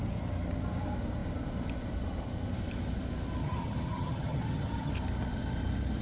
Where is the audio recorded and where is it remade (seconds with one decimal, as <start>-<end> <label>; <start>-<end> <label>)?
0.0-3.4 recorded; 3.4-4.9 remade; 4.9-6.0 recorded

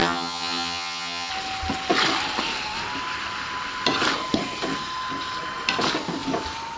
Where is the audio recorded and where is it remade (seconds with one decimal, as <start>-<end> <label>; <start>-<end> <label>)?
0.0-1.3 remade; 1.3-6.8 recorded

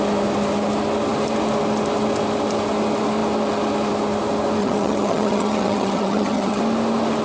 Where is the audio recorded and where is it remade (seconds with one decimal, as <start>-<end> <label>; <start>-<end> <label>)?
0.0-4.6 recorded; 4.6-6.6 remade; 6.6-7.2 recorded

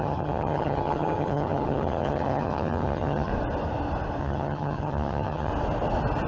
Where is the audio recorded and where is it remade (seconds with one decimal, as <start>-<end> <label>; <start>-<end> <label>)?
0.0-3.3 remade; 3.3-4.2 recorded; 4.2-5.5 remade; 5.5-6.3 recorded